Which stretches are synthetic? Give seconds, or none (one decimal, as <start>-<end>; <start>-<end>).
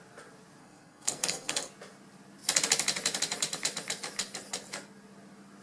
0.6-1.7